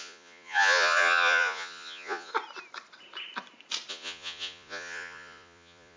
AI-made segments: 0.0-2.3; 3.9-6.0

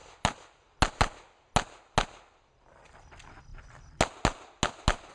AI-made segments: none